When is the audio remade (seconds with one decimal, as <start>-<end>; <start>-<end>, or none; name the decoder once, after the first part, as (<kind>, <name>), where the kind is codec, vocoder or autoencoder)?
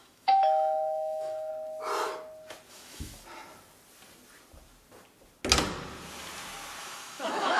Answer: 0.0-1.5 (autoencoder, DAC-VAE); 2.7-3.1; 6.8-7.6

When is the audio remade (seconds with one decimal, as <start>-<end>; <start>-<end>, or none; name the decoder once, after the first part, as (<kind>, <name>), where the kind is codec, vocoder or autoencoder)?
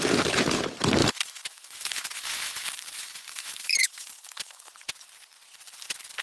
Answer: 1.0-4.7 (autoencoder, DAC-VAE)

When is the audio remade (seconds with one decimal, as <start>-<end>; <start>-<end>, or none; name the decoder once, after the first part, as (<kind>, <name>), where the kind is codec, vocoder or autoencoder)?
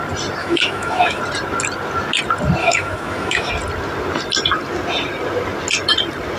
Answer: 0.4-1.2 (autoencoder, DAC-VAE); 2.6-3.5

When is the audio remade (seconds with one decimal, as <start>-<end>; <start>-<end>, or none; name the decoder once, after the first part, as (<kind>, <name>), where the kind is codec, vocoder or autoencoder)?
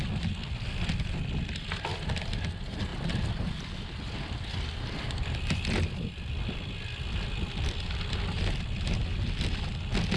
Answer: none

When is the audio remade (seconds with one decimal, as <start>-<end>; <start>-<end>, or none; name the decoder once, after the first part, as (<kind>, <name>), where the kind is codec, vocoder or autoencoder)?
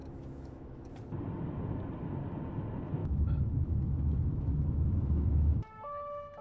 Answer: 0.0-0.9 (autoencoder, DAC-VAE); 3.0-5.6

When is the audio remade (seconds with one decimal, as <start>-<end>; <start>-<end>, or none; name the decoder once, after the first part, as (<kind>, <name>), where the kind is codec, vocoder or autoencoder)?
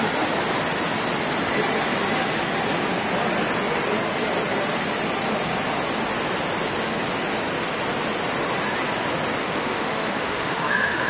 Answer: 9.4-11.1 (autoencoder, DAC-VAE)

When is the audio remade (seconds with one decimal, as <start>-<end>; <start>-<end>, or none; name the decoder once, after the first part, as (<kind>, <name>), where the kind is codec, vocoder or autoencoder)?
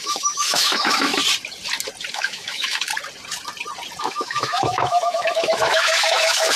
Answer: 0.0-1.1 (autoencoder, DAC-VAE); 2.1-2.9; 4.0-6.6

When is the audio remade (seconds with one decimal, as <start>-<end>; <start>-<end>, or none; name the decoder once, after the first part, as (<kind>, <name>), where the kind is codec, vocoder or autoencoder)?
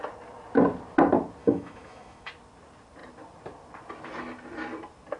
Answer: 1.4-2.3 (autoencoder, DAC-VAE)